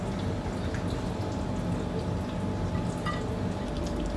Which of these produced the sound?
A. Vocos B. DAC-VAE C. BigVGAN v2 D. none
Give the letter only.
D